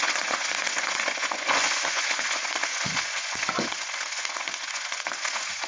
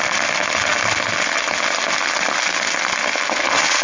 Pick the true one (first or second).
second